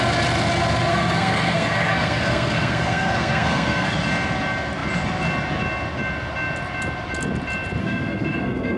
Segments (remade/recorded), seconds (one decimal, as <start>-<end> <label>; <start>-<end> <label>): 0.0-0.9 recorded; 0.9-3.9 remade; 3.9-7.8 recorded; 7.8-8.8 remade